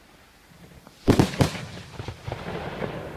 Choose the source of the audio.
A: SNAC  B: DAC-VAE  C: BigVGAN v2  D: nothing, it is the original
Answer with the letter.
D